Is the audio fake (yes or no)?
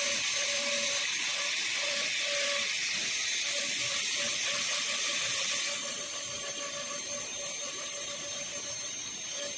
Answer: no